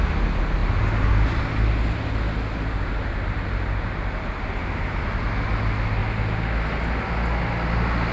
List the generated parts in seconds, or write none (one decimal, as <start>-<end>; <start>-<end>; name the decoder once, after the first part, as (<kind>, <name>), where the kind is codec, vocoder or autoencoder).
none